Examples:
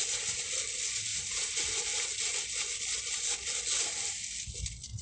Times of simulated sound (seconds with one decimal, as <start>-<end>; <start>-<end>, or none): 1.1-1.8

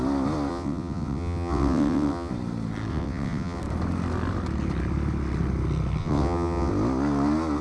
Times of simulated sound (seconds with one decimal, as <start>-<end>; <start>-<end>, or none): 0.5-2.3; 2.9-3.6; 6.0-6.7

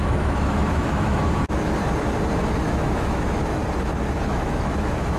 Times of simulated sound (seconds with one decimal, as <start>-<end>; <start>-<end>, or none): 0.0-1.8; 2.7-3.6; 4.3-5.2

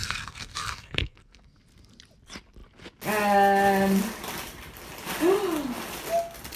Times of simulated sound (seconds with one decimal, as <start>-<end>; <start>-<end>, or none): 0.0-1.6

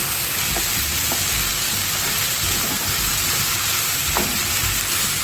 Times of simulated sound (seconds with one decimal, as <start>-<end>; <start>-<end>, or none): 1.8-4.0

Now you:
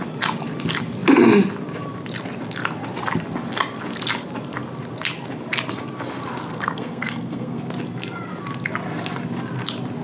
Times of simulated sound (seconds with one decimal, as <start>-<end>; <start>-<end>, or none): 6.5-7.6